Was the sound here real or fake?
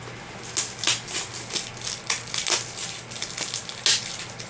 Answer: real